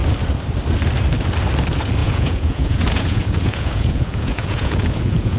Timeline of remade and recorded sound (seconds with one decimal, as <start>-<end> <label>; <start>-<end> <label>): 0.0-2.0 recorded; 2.0-5.4 remade